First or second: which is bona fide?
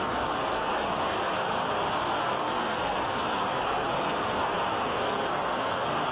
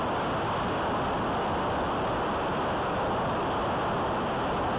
second